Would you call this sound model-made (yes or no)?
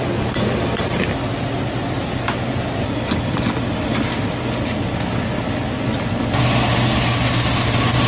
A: no